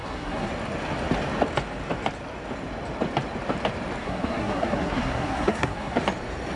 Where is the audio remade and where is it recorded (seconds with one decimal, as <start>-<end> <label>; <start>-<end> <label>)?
0.0-0.5 remade; 0.5-4.0 recorded; 4.0-6.0 remade; 6.0-6.6 recorded